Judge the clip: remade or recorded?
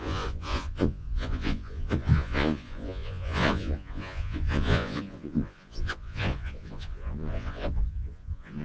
remade